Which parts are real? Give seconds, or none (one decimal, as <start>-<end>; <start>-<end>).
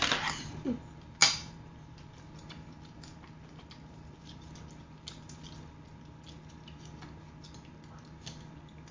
0.0-1.2; 4.2-8.9